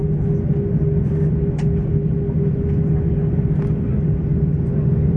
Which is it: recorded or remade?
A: recorded